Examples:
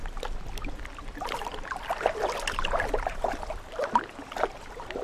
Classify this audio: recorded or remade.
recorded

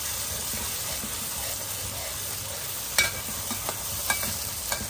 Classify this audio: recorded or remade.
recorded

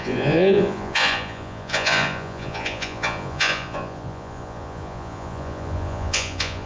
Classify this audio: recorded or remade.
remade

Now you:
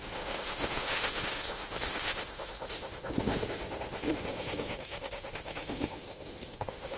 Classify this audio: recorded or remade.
remade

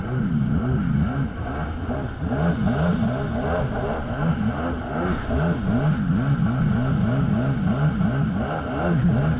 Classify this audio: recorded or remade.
recorded